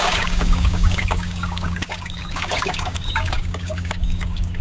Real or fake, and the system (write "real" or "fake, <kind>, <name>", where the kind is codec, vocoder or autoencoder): fake, codec, DAC